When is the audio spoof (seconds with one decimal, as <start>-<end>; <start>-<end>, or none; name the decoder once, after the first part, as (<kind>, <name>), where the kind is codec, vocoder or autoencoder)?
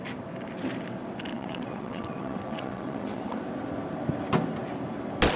1.3-3.4 (vocoder, WaveNeXt)